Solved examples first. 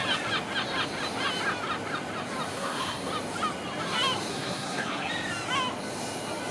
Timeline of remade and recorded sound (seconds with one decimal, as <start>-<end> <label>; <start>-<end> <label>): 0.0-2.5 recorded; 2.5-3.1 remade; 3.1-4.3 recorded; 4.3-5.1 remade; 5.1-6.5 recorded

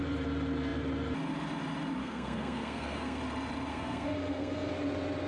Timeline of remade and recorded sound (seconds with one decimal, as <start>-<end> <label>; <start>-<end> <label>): 0.0-2.0 recorded; 2.0-3.2 remade; 3.2-3.7 recorded; 3.7-4.7 remade; 4.7-5.3 recorded

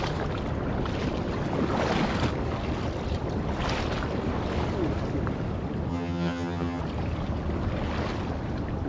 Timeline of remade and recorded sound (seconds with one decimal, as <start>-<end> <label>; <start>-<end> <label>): 0.0-5.9 recorded; 5.9-6.8 remade; 6.8-8.9 recorded

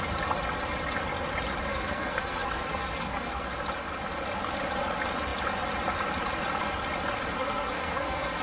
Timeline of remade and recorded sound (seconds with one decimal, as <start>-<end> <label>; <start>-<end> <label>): 0.0-1.7 recorded; 1.7-3.5 remade; 3.5-7.4 recorded; 7.4-8.4 remade

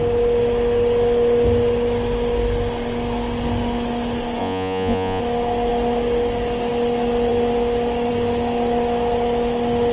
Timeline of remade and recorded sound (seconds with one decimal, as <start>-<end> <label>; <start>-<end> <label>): 0.0-4.4 recorded; 4.4-5.2 remade; 5.2-9.9 recorded